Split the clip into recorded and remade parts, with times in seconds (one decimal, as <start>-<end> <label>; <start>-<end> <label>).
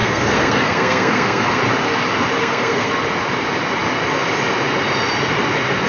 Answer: 0.0-1.6 remade; 1.6-2.4 recorded; 2.4-2.9 remade; 2.9-5.9 recorded